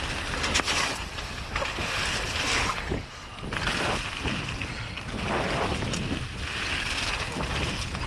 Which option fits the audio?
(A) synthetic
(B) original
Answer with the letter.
B